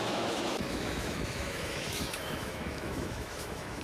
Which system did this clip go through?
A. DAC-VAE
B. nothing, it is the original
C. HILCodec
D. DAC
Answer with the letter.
A